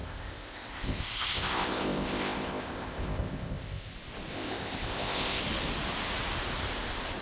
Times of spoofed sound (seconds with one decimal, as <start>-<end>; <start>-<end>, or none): 0.0-3.9; 4.3-5.4